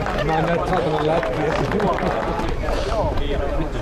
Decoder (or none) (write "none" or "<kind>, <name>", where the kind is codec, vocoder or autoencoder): none